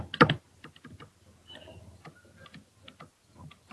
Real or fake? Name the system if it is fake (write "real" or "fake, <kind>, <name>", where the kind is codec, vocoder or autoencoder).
real